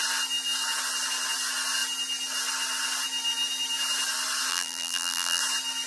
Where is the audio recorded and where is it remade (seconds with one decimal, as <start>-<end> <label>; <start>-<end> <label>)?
0.0-4.5 recorded; 4.5-5.4 remade; 5.4-5.9 recorded